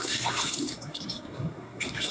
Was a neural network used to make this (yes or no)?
yes